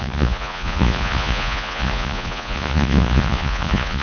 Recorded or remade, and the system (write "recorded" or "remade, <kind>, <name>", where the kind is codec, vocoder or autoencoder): remade, vocoder, Vocos